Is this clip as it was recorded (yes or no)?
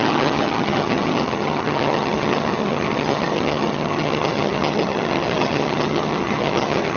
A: no